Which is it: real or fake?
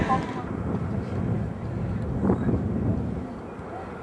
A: real